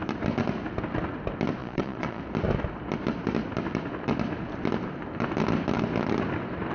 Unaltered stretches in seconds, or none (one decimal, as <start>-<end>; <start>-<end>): 0.0-1.6; 2.2-6.7